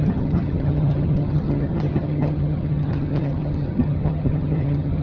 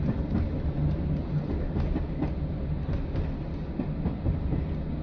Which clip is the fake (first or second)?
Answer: first